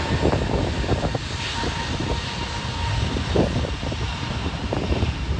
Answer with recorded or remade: recorded